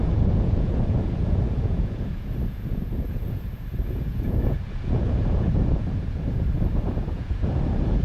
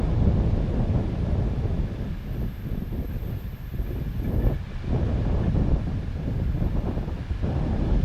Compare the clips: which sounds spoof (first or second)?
first